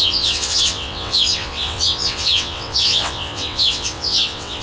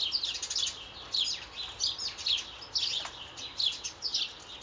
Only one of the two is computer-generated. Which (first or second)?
first